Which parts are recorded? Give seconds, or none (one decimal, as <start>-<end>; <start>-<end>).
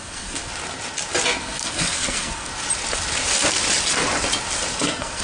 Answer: 0.5-1.4; 2.5-4.8